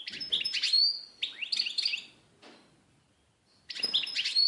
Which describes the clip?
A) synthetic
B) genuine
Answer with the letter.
B